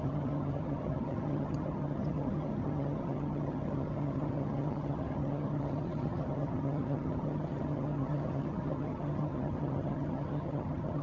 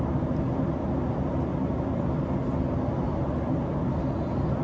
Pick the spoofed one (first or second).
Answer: first